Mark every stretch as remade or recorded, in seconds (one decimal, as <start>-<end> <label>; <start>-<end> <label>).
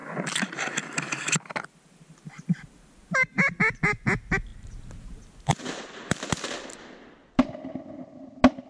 0.0-8.7 recorded